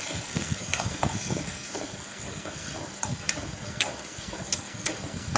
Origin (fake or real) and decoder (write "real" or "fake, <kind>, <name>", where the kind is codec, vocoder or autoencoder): fake, codec, SNAC